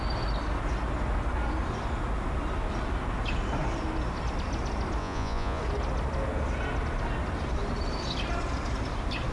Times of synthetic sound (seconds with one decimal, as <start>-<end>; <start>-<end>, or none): 5.0-5.6